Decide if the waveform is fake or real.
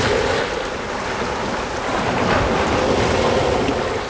real